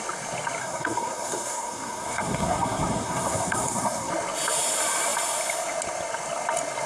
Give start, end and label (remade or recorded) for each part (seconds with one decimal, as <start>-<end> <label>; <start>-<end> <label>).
0.0-0.6 recorded; 0.6-4.1 remade; 4.1-6.9 recorded